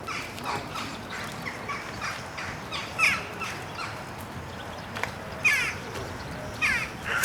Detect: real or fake real